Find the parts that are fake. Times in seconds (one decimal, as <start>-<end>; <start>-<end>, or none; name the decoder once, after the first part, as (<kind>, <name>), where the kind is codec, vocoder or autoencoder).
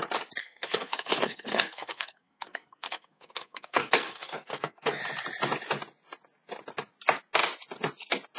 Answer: 0.4-5.0 (codec, SNAC)